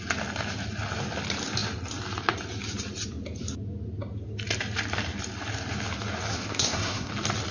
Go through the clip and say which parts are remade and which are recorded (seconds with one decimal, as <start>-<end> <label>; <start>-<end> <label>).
0.0-6.3 recorded; 6.3-7.1 remade; 7.1-7.5 recorded